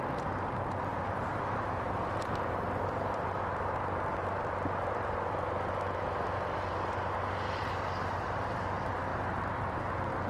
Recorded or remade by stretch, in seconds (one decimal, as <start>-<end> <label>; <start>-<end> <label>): 0.0-0.9 recorded; 0.9-3.4 remade; 3.4-9.1 recorded; 9.1-9.9 remade; 9.9-10.3 recorded